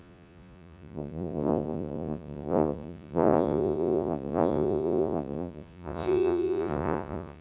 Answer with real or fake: fake